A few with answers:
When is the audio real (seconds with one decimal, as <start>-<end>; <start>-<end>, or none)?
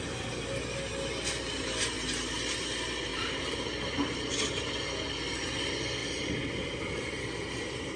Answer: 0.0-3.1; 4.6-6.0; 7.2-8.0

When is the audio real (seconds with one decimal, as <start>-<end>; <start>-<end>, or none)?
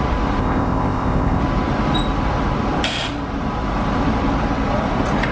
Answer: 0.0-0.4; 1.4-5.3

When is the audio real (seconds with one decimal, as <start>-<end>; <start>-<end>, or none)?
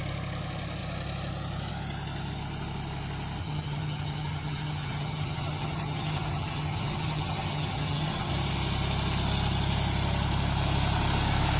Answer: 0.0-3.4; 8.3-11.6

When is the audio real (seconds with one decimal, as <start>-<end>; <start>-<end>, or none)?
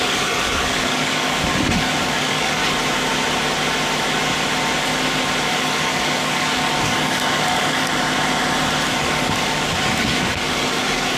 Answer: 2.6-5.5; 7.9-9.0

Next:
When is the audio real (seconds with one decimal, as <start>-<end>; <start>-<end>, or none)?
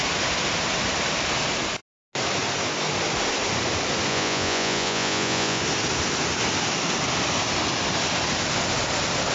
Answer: 0.0-4.1; 5.6-9.3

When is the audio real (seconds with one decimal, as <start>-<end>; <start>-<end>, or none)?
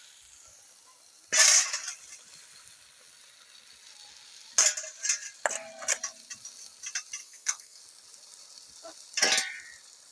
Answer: 0.0-7.2; 7.8-10.1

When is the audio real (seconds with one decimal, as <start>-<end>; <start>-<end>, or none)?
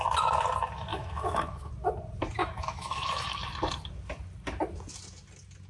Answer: 0.0-0.9; 1.7-2.4; 3.4-5.7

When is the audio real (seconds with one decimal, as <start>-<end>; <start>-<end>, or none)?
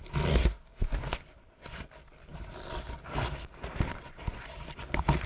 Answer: 0.0-0.4; 1.2-5.3